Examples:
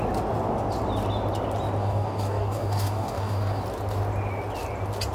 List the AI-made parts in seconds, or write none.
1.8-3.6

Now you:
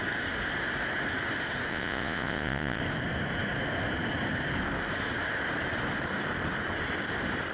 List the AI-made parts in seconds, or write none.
1.7-2.8

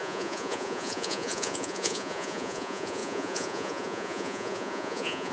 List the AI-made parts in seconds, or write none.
0.0-5.3